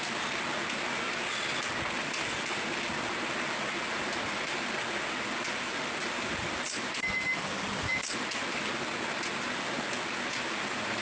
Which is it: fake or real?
real